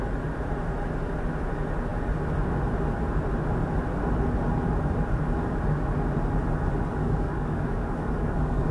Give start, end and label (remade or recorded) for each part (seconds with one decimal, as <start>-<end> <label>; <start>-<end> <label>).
0.0-7.0 recorded; 7.0-8.7 remade